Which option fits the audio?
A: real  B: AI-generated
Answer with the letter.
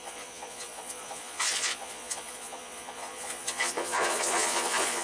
B